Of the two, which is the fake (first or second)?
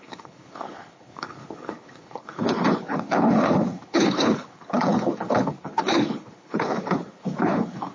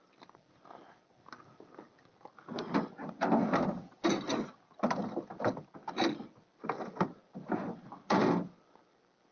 first